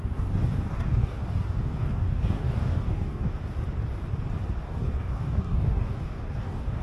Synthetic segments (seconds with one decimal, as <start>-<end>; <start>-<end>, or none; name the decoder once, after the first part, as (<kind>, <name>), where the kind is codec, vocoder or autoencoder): 0.0-3.3 (codec, DAC); 4.6-6.8